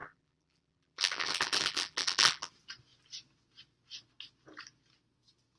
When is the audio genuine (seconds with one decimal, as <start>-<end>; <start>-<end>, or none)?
2.5-5.6